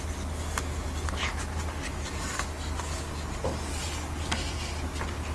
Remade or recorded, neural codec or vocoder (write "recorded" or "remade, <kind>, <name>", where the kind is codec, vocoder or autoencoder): recorded